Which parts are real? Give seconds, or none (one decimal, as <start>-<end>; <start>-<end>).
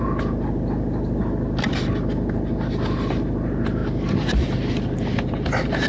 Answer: 0.0-5.9